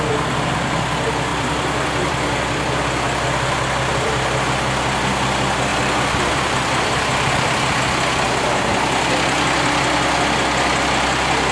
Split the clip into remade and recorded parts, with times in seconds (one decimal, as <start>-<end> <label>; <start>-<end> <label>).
0.0-1.3 recorded; 1.3-4.4 remade; 4.4-5.7 recorded; 5.7-7.8 remade; 7.8-11.5 recorded